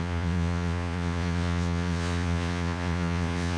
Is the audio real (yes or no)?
no